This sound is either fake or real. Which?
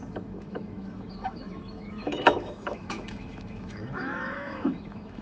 fake